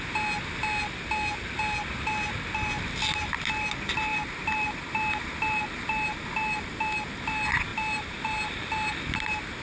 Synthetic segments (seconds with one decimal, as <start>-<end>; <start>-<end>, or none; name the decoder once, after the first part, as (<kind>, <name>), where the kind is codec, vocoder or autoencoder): none